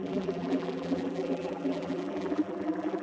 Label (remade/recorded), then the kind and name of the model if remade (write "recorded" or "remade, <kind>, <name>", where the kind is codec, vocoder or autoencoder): remade, vocoder, BigVGAN v2